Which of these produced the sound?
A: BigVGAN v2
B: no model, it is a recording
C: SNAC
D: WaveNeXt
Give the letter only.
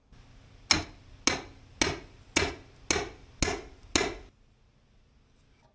B